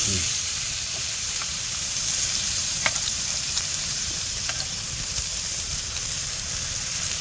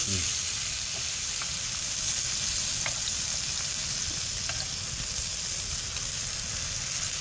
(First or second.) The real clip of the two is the second